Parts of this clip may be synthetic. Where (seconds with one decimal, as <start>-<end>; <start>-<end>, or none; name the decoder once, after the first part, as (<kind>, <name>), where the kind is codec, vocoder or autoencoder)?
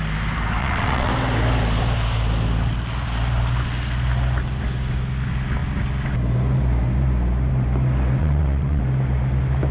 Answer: 0.6-1.1 (vocoder, WaveNeXt); 8.2-8.8